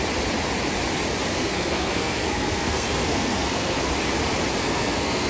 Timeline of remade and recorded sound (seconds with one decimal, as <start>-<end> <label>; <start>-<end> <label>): 0.0-1.3 recorded; 1.3-3.9 remade; 3.9-4.6 recorded; 4.6-5.3 remade